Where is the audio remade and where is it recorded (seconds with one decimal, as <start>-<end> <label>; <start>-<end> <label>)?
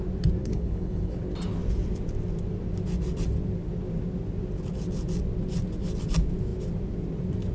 0.0-0.4 recorded; 0.4-1.2 remade; 1.2-7.5 recorded